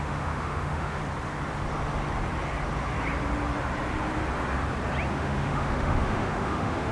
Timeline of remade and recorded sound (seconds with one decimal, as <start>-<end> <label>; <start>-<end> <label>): 0.0-1.0 remade; 1.0-5.1 recorded; 5.1-6.9 remade